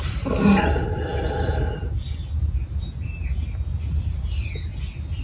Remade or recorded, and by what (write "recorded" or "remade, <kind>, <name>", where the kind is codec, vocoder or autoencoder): recorded